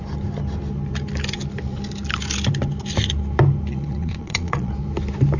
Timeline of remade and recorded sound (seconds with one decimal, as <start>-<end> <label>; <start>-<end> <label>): 0.0-3.7 recorded; 3.7-4.7 remade; 4.7-5.4 recorded